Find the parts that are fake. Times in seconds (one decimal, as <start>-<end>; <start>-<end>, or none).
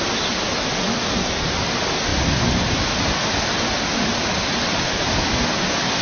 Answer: none